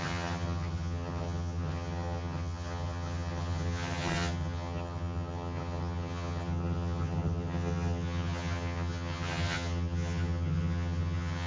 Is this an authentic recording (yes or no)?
no